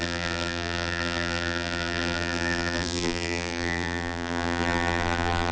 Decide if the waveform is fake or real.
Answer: fake